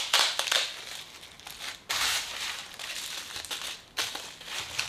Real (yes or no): yes